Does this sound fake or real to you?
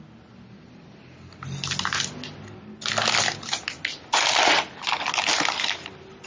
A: real